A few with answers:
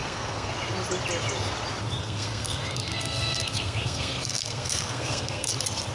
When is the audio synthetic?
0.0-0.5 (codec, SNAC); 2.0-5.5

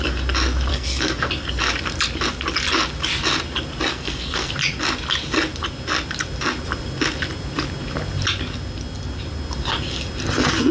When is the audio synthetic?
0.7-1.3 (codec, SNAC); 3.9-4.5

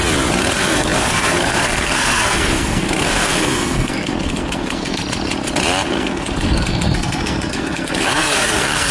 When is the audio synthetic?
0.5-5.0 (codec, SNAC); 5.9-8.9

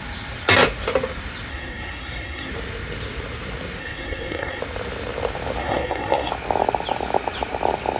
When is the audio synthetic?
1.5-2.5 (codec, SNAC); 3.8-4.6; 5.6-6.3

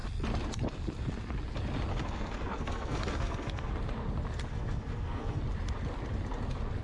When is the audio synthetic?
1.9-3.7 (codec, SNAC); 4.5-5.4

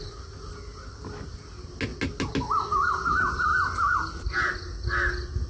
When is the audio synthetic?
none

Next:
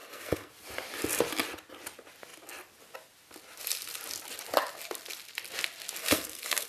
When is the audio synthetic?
0.0-0.5 (codec, SNAC); 6.0-6.7